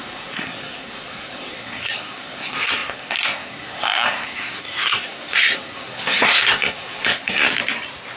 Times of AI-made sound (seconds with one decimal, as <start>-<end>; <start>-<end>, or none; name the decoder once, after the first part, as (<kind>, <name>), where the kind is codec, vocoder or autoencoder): 0.0-7.5 (codec, SNAC)